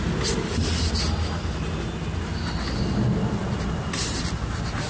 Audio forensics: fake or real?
real